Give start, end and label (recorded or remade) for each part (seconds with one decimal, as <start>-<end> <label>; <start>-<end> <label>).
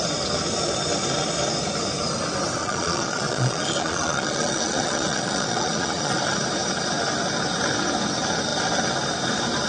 0.0-2.6 recorded; 2.6-6.2 remade; 6.2-9.7 recorded